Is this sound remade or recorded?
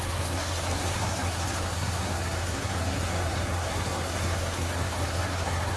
remade